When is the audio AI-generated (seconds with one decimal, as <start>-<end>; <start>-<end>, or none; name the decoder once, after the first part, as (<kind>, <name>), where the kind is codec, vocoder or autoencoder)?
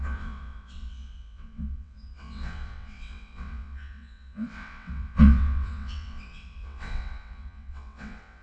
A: 0.0-8.4 (vocoder, WaveNeXt)